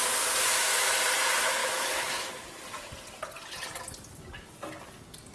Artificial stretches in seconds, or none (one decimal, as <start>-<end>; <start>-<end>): 1.6-2.3